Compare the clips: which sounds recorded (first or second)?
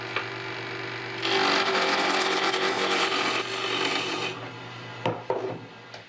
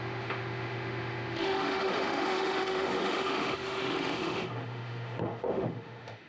first